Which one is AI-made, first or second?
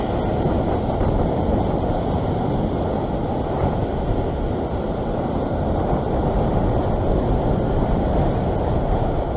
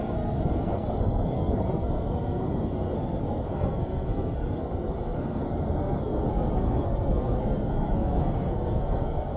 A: second